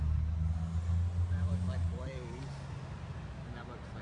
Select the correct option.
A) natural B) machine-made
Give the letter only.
A